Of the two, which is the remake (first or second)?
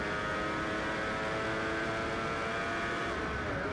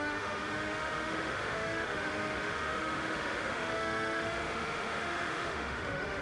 second